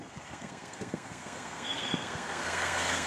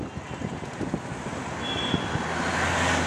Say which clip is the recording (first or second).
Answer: second